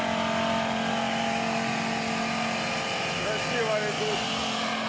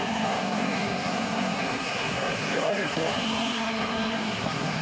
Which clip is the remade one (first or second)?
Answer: second